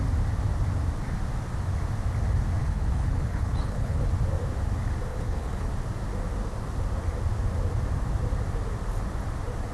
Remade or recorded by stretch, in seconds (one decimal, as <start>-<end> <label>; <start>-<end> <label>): 0.0-2.6 recorded; 2.6-4.1 remade; 4.1-5.1 recorded; 5.1-5.7 remade; 5.7-9.7 recorded